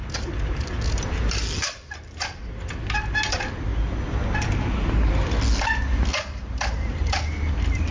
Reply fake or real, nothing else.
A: real